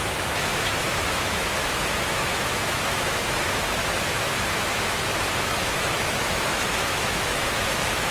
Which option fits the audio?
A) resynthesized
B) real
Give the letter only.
A